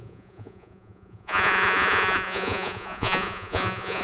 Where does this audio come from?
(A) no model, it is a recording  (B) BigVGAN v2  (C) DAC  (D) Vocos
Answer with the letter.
D